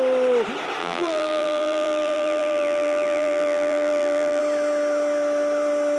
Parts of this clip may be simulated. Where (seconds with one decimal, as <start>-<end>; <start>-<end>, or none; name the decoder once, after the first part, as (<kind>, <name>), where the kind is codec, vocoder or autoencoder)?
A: 0.8-4.4 (vocoder, BigVGAN v2)

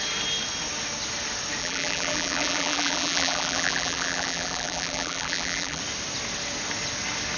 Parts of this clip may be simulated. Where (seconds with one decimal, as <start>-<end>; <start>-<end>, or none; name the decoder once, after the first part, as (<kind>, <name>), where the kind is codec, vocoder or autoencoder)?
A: 1.6-5.8 (vocoder, BigVGAN v2)

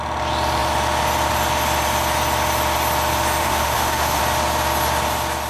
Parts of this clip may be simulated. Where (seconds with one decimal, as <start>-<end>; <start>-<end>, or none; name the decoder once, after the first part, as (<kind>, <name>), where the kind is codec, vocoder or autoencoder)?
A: 3.4-4.2 (autoencoder, DAC-VAE)